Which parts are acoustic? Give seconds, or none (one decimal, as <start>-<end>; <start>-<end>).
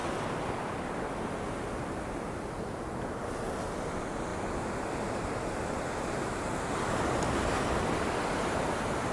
0.0-9.1